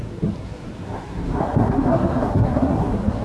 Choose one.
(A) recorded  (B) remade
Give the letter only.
B